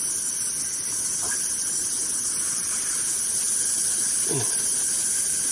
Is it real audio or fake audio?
real